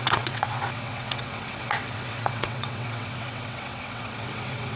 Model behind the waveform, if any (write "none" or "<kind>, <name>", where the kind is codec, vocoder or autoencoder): vocoder, WaveNeXt